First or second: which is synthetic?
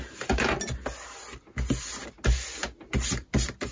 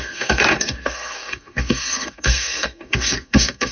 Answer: second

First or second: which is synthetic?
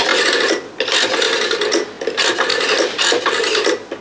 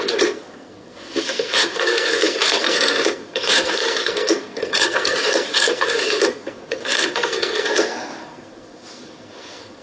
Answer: second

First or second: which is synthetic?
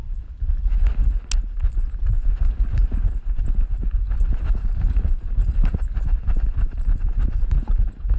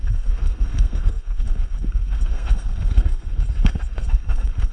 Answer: second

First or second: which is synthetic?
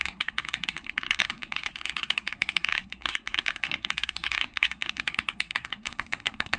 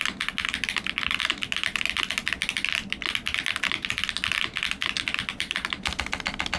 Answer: first